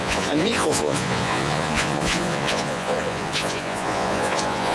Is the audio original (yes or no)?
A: no